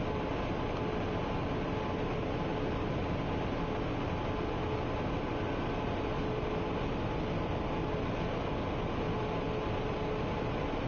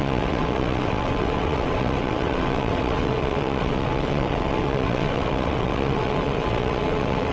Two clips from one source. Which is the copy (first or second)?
second